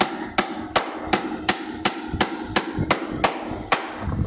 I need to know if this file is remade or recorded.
recorded